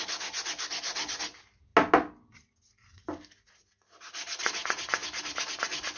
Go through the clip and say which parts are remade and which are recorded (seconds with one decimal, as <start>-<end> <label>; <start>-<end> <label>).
0.0-6.0 recorded